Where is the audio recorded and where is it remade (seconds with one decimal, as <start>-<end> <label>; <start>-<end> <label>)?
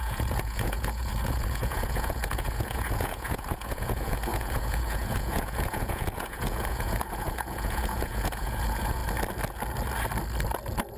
0.0-9.0 remade; 9.0-11.0 recorded